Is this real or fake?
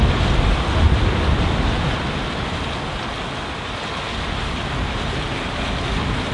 real